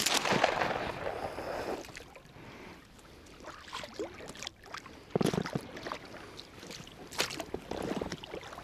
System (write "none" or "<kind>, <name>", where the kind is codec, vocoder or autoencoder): none